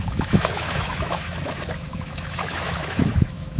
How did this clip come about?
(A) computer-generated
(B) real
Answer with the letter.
A